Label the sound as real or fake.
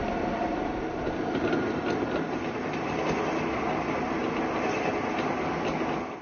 real